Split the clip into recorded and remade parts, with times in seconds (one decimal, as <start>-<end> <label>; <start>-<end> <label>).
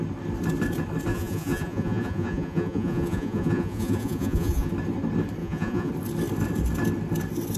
0.0-1.1 recorded; 1.1-4.7 remade; 4.7-5.4 recorded; 5.4-5.9 remade; 5.9-7.6 recorded